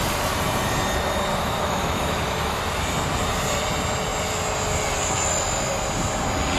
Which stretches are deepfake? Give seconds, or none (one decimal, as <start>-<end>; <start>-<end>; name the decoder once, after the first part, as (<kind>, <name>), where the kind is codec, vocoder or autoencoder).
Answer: 1.3-2.6 (autoencoder, DAC-VAE)